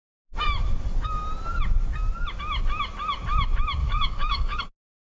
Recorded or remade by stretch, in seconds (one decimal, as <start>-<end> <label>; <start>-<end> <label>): 0.0-3.8 recorded; 3.8-4.6 remade; 4.6-5.1 recorded